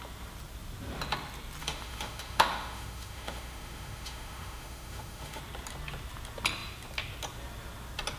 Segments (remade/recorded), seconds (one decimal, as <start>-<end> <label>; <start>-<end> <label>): 0.0-1.6 recorded; 1.6-5.4 remade; 5.4-8.2 recorded